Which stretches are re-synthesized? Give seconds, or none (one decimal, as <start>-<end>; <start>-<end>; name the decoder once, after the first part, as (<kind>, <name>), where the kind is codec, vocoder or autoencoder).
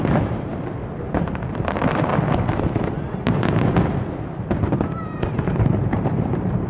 0.0-0.5 (vocoder, BigVGAN v2); 1.0-2.1; 4.8-6.7